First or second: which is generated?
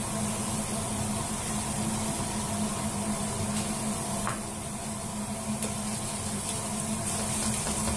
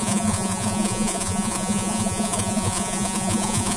second